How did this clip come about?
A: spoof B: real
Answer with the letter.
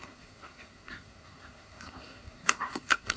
A